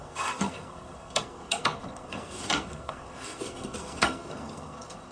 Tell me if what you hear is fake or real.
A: fake